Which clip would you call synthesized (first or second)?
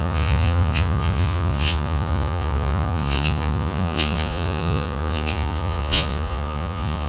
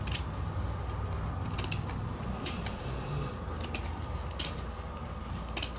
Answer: first